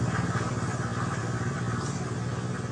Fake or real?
real